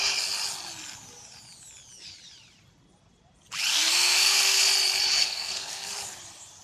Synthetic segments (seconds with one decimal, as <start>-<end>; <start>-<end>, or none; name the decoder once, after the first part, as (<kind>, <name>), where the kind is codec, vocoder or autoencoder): 3.7-4.6 (codec, SNAC); 5.2-5.9